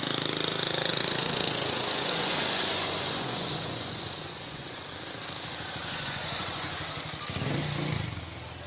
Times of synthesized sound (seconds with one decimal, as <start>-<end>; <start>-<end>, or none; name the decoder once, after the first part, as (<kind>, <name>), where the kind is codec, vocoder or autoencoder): 0.9-4.9 (vocoder, Vocos); 5.8-6.8